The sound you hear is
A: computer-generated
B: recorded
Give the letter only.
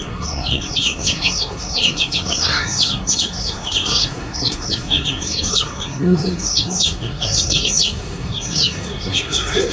A